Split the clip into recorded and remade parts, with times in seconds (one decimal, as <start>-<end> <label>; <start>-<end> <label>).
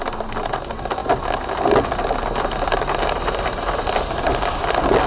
0.0-5.1 recorded